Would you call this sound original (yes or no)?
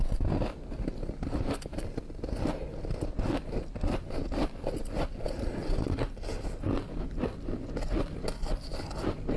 yes